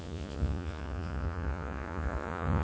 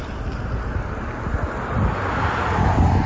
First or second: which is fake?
first